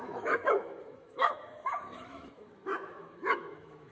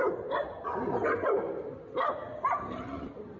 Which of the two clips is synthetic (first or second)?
first